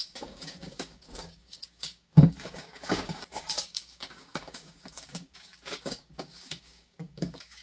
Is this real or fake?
fake